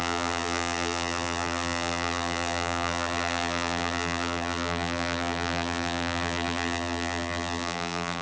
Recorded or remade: remade